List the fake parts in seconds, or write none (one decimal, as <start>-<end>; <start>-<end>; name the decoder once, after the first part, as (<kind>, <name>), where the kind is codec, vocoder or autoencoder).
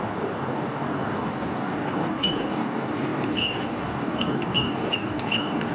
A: 0.0-5.7 (codec, DAC)